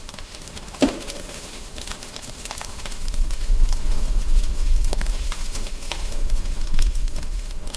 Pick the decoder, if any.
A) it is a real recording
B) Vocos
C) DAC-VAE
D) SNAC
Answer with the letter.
C